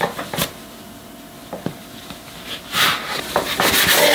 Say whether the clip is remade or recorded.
recorded